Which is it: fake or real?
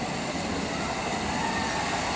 real